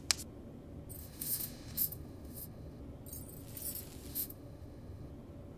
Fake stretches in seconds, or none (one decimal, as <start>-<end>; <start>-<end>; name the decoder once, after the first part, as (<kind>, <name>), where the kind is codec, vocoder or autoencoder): 1.0-2.8 (autoencoder, DAC-VAE); 4.1-5.1